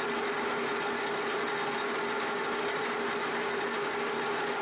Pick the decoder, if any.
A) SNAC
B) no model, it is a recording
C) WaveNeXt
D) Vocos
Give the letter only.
B